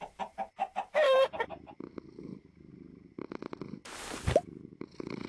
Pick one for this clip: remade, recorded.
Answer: remade